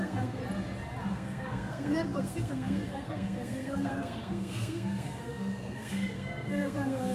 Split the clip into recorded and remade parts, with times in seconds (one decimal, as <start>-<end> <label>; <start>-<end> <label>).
0.0-0.4 remade; 0.4-1.1 recorded; 1.1-7.1 remade